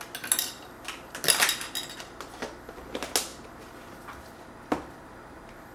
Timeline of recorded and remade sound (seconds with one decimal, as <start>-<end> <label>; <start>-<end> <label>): 0.0-5.7 recorded